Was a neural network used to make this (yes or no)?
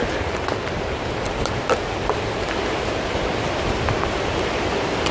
no